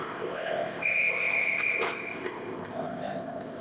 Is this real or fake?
fake